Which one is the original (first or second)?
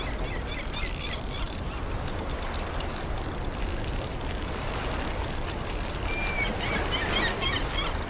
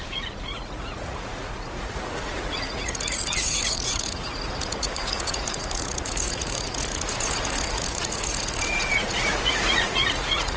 first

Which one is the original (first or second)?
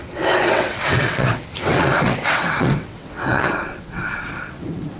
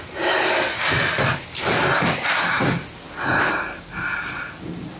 second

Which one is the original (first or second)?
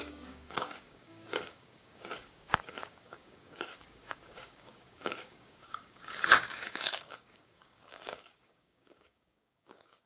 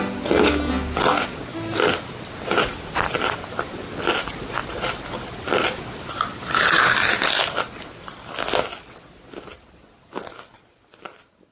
second